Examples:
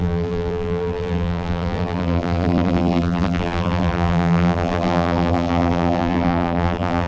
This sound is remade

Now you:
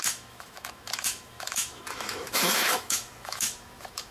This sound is remade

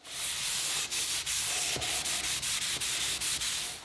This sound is recorded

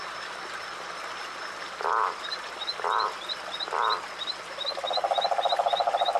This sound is recorded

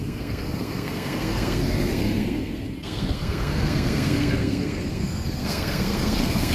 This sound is remade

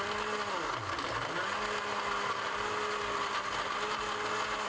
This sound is recorded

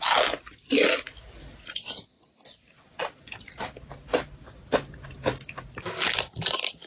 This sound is recorded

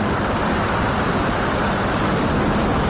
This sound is remade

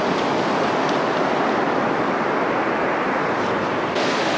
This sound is recorded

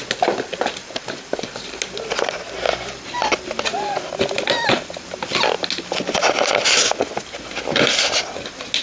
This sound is recorded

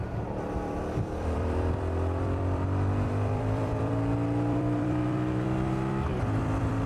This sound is remade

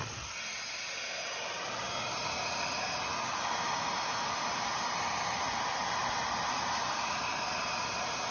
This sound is recorded